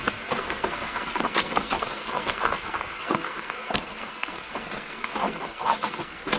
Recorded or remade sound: remade